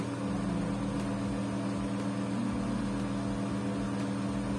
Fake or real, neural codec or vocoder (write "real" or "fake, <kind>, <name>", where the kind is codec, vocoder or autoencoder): real